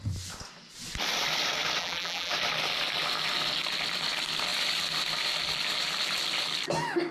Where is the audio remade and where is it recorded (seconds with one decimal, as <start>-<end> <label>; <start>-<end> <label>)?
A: 0.0-1.8 recorded; 1.8-2.3 remade; 2.3-7.1 recorded